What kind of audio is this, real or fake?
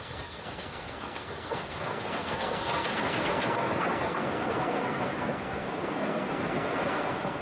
fake